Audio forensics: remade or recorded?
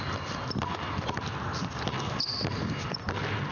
recorded